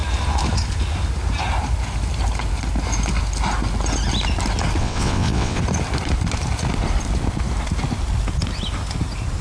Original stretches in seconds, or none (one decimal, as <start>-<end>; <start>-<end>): 0.0-4.8; 5.6-9.4